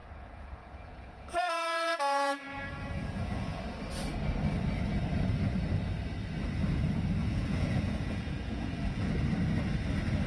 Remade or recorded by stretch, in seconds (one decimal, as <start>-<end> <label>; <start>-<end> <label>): 0.0-3.6 remade; 3.6-7.2 recorded; 7.2-9.1 remade; 9.1-10.3 recorded